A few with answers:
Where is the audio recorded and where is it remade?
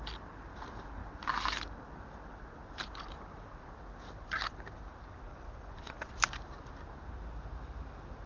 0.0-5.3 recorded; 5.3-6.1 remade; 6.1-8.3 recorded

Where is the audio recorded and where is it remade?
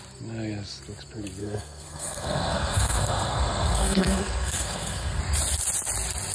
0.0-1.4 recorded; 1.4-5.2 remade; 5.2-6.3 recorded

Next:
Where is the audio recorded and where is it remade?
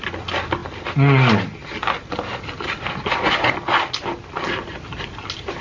0.0-5.6 recorded